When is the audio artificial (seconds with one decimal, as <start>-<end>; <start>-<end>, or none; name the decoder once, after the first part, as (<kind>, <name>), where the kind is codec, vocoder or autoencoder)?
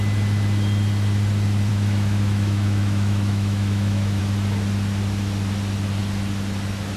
1.7-4.2 (autoencoder, DAC-VAE)